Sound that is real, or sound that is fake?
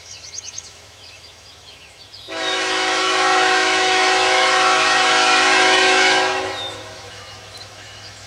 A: fake